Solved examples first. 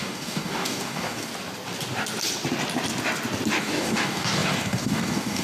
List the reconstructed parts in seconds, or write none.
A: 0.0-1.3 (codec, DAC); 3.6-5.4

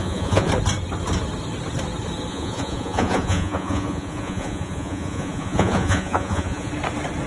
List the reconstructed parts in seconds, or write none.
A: 0.0-0.5 (vocoder, Vocos); 2.3-6.7

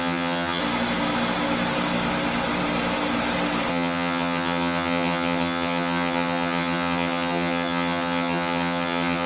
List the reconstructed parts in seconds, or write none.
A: 0.0-0.6 (vocoder, HiFi-GAN); 3.7-9.3

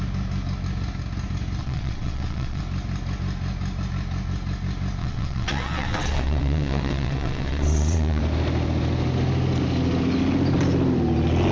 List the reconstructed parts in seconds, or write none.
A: 1.6-2.6 (vocoder, WaveNeXt); 5.0-8.2

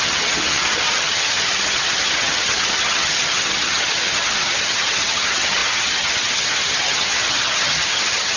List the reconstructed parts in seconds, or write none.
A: 0.0-8.4 (vocoder, HiFi-GAN)

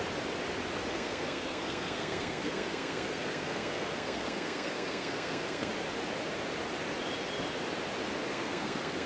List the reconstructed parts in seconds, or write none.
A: 0.9-5.7 (codec, SNAC); 8.3-9.1

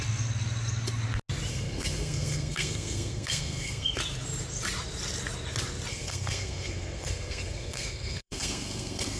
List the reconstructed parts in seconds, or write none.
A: 1.5-4.0 (codec, SNAC); 5.9-9.2

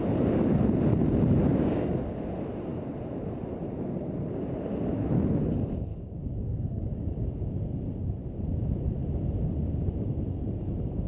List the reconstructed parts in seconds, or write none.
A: 1.5-2.3 (codec, DAC); 5.9-7.2